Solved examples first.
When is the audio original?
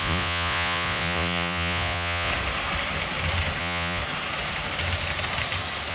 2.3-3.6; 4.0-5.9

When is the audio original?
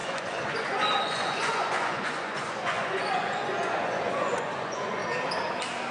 5.0-5.9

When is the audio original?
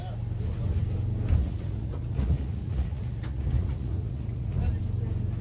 0.0-1.4; 4.6-5.4